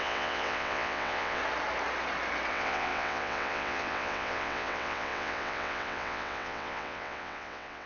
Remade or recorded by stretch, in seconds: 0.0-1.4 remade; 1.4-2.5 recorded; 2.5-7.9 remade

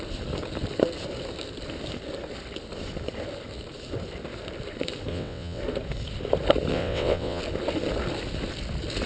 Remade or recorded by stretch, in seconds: 0.0-5.1 recorded; 5.1-5.6 remade; 5.6-6.7 recorded; 6.7-7.4 remade; 7.4-9.1 recorded

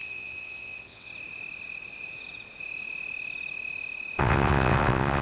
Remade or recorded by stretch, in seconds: 0.0-1.1 remade; 1.1-4.2 recorded; 4.2-5.2 remade

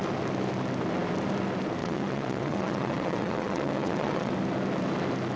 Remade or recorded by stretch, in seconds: 0.0-1.8 recorded; 1.8-4.3 remade; 4.3-5.4 recorded